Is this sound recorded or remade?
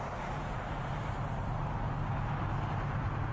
recorded